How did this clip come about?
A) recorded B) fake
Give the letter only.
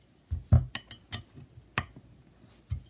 A